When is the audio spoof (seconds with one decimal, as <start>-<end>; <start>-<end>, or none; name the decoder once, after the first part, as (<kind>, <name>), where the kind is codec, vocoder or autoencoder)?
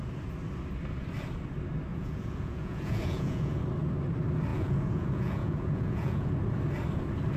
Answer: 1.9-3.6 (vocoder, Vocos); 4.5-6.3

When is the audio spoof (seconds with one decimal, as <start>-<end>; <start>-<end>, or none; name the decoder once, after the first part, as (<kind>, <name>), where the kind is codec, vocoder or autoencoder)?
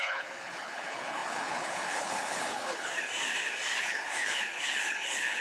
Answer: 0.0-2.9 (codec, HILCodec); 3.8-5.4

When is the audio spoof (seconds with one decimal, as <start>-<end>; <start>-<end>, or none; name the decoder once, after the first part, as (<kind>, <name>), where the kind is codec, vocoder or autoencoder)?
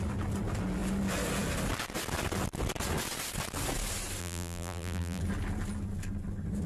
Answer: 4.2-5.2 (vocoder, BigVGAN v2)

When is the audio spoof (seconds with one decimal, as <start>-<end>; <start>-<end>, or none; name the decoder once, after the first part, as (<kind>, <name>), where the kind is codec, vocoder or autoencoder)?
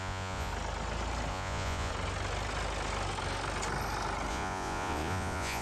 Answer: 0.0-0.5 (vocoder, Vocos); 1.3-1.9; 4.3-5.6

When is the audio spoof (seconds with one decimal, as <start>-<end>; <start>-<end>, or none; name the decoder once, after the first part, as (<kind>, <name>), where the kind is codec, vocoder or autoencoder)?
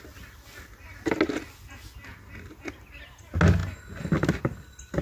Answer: none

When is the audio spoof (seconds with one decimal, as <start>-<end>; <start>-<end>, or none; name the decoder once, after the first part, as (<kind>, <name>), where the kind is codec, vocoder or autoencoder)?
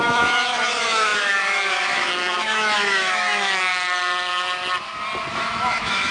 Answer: 0.0-3.7 (autoencoder, DAC-VAE); 5.3-6.1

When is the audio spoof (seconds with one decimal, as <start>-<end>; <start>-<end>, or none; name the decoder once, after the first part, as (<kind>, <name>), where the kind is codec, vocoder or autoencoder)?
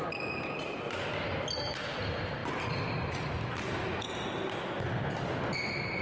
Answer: none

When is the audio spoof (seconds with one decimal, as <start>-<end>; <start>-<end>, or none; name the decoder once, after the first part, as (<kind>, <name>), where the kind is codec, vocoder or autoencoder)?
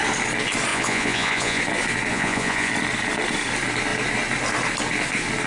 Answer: 0.7-1.6 (vocoder, Vocos); 2.1-2.7